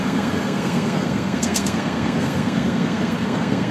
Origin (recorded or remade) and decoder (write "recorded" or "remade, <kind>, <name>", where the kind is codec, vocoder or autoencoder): remade, codec, SNAC